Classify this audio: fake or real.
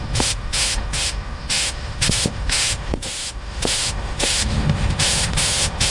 fake